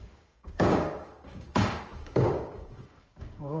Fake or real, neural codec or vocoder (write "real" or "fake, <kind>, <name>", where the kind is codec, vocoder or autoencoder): fake, codec, DAC